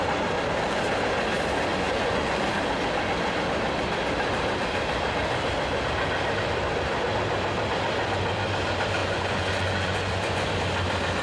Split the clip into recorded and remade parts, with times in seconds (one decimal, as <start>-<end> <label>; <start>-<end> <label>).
0.0-1.7 recorded; 1.7-2.5 remade; 2.5-9.0 recorded; 9.0-10.5 remade; 10.5-11.2 recorded